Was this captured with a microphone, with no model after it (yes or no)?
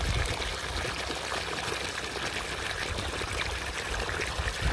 yes